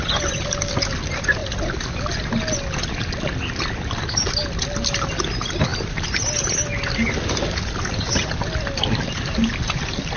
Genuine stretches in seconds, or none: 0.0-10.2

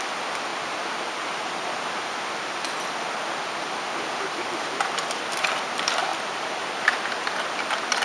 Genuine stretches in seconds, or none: 0.0-6.1; 6.6-8.0

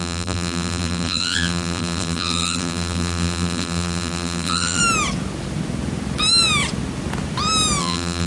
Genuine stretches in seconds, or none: 4.8-7.8

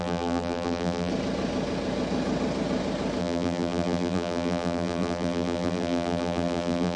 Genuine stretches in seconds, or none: 1.1-3.2

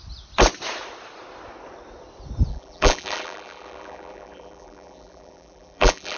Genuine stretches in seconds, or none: 0.0-2.5

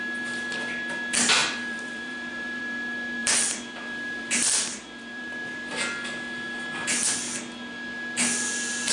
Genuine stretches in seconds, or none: 0.0-1.4; 2.6-3.2; 5.7-8.9